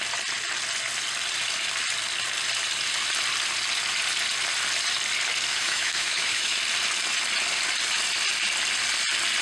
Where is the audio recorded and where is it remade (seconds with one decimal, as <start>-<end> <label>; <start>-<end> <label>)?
0.0-5.5 recorded; 5.5-6.6 remade; 6.6-9.4 recorded